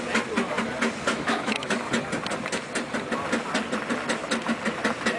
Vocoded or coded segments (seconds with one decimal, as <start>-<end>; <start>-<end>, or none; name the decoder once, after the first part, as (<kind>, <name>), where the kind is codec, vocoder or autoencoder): 1.1-1.8 (autoencoder, DAC-VAE)